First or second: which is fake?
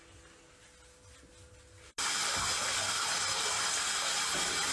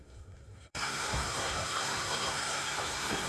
second